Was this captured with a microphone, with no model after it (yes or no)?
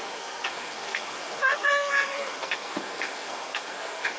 no